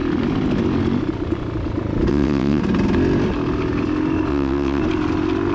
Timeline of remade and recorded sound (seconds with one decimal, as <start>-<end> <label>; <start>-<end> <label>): 0.0-2.1 recorded; 2.1-2.6 remade; 2.6-4.3 recorded; 4.3-4.8 remade; 4.8-5.5 recorded

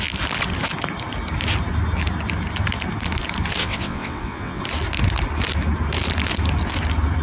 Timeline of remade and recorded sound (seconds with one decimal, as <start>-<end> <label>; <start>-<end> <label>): 0.0-3.6 recorded; 3.6-4.6 remade; 4.6-7.2 recorded

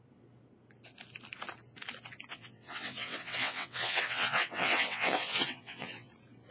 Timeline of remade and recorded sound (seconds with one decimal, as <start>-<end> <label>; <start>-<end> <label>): 0.0-2.3 recorded; 2.3-6.1 remade; 6.1-6.5 recorded

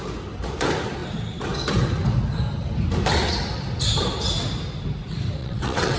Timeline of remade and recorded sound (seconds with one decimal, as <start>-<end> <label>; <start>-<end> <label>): 0.0-5.4 recorded; 5.4-6.0 remade

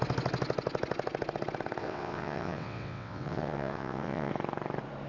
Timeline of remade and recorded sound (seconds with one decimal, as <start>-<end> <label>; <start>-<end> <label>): 0.0-1.8 recorded; 1.8-4.3 remade; 4.3-5.1 recorded

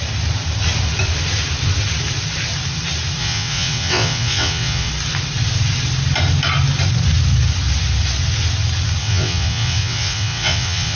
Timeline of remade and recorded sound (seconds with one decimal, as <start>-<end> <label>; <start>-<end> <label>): 0.0-3.2 recorded; 3.2-4.9 remade; 4.9-9.0 recorded; 9.0-11.0 remade

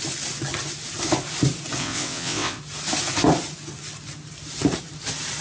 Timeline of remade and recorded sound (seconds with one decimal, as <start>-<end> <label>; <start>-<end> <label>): 0.0-1.8 recorded; 1.8-2.6 remade; 2.6-5.4 recorded